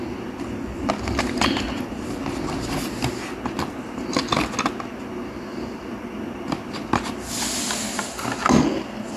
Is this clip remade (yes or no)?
no